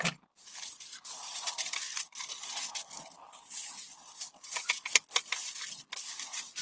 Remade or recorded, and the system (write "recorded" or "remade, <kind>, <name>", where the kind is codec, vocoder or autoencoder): recorded